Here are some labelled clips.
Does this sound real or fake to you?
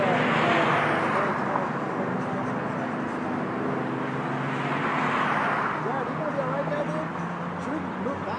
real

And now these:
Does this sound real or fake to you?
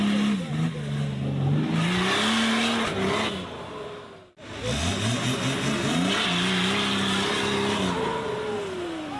real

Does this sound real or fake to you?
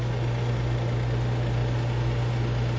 real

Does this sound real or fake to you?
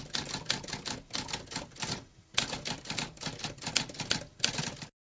real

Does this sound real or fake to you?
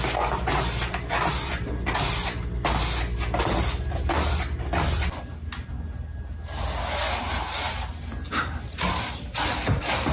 real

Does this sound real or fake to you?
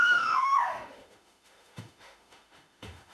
fake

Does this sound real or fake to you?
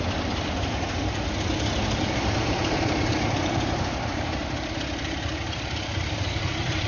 fake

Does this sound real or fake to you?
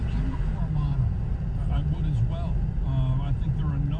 real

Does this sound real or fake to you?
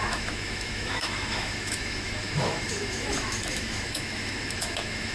fake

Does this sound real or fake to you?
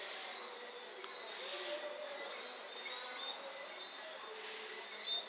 real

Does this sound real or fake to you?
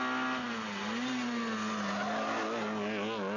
real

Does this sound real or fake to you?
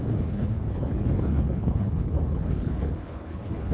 fake